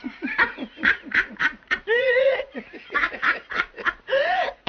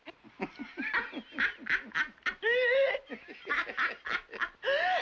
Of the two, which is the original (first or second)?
second